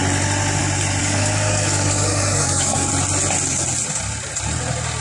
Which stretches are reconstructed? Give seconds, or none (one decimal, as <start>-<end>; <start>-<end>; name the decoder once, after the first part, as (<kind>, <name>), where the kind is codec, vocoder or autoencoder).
1.0-2.9 (codec, DAC)